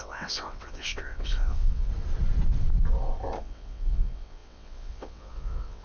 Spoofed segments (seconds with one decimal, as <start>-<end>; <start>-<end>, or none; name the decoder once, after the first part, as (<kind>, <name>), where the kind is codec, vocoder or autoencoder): 0.0-1.9 (vocoder, WaveNeXt); 3.4-5.8

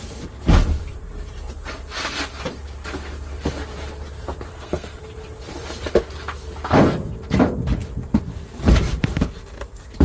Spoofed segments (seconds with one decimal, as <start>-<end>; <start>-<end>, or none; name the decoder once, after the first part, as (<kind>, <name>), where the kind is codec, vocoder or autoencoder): 4.5-5.0 (codec, SNAC)